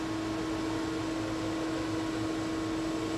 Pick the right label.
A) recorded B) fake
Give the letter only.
A